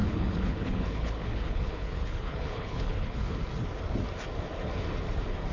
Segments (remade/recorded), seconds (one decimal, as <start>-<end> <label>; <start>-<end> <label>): 0.0-3.3 remade; 3.3-5.5 recorded